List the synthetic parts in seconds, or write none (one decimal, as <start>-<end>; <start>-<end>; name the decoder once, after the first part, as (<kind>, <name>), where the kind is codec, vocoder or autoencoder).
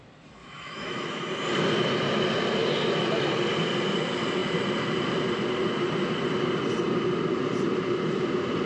0.4-1.3 (autoencoder, DAC-VAE)